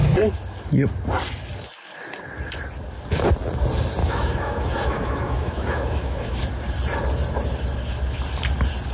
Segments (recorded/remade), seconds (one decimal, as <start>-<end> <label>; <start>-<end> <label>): 0.0-4.0 recorded; 4.0-6.4 remade; 6.4-8.9 recorded